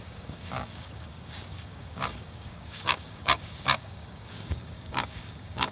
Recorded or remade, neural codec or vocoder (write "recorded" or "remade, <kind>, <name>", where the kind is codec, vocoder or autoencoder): remade, codec, DAC